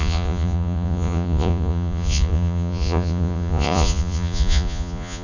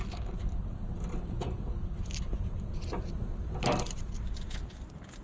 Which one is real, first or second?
second